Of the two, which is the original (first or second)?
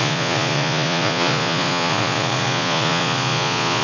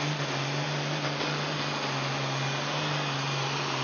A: second